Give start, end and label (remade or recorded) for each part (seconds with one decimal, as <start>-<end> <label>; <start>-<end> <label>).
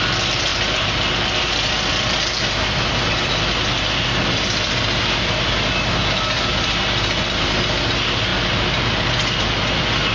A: 0.0-10.1 recorded